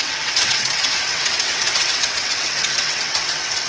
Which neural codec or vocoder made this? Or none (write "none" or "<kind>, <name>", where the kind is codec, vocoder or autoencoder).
vocoder, WaveNeXt